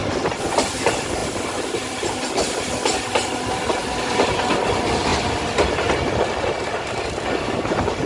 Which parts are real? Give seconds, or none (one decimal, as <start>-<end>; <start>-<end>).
0.0-1.2; 2.3-8.1